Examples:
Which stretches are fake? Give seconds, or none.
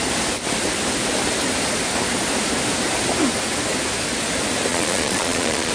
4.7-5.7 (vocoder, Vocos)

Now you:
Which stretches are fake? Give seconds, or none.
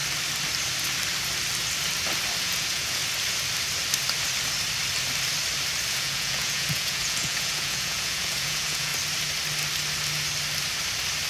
2.4-3.0 (vocoder, Vocos); 5.9-8.9